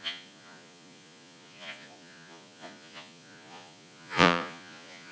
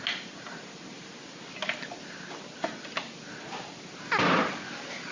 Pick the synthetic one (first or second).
first